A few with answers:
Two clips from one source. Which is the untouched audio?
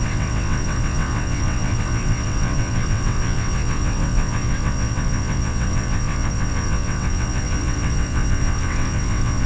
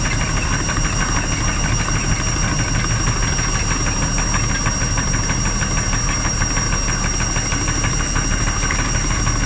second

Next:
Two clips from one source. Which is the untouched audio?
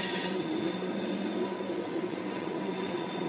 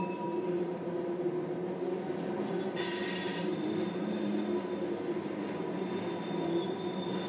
second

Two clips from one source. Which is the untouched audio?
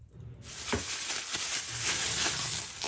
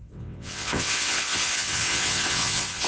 first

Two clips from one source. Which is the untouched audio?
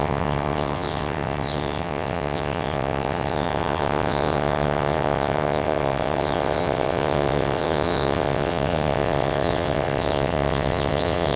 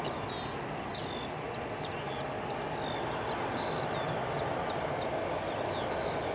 second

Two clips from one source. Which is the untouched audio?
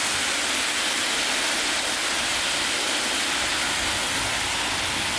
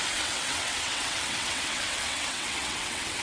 first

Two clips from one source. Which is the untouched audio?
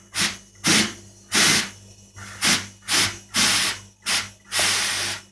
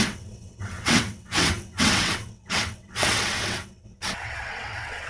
first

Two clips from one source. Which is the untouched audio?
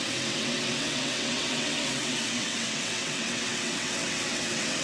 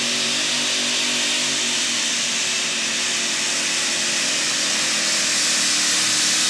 second